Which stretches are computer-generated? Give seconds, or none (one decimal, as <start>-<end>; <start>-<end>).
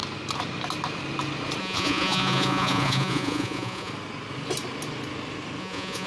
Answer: 1.6-3.9; 5.6-6.1